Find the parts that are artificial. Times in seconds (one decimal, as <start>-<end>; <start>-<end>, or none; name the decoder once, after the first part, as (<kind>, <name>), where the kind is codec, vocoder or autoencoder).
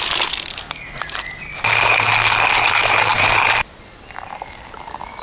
3.1-3.7 (vocoder, BigVGAN v2)